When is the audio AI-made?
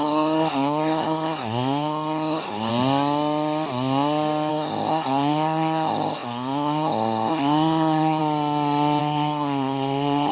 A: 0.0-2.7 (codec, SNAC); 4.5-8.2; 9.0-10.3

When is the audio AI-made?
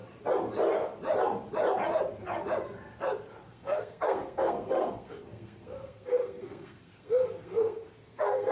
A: 3.4-8.5 (codec, SNAC)